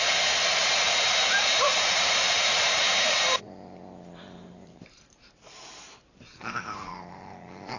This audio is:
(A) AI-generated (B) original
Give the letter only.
A